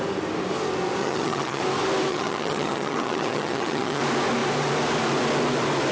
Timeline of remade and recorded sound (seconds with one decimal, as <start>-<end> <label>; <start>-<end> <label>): 0.0-1.0 recorded; 1.0-1.6 remade; 1.6-2.1 recorded; 2.1-4.0 remade; 4.0-5.9 recorded